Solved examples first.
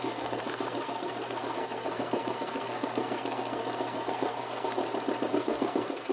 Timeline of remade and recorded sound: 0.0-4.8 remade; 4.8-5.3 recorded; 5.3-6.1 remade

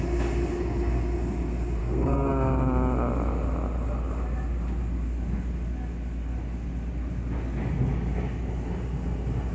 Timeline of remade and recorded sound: 0.0-1.8 recorded; 1.8-2.3 remade; 2.3-9.5 recorded

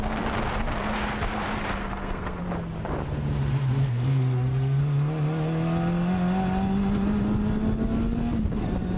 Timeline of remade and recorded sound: 0.0-1.8 recorded; 1.8-2.4 remade; 2.4-3.8 recorded; 3.8-4.8 remade; 4.8-9.0 recorded

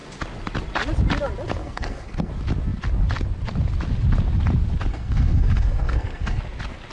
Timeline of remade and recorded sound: 0.0-1.6 recorded; 1.6-2.3 remade; 2.3-4.9 recorded; 4.9-6.4 remade; 6.4-6.9 recorded

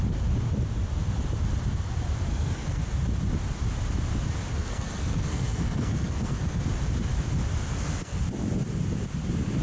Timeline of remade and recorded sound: 0.0-2.3 recorded; 2.3-2.8 remade; 2.8-4.5 recorded; 4.5-6.6 remade; 6.6-7.7 recorded; 7.7-8.2 remade; 8.2-9.6 recorded